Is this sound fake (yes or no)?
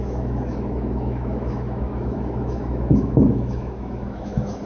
yes